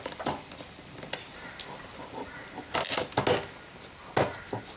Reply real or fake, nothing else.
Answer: real